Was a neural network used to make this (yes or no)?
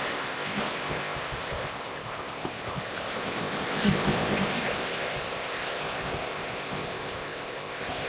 yes